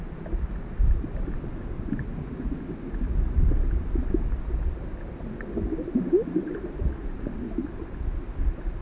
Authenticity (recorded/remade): recorded